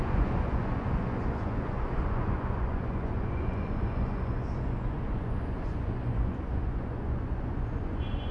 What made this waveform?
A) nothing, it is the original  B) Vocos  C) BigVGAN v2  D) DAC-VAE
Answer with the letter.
B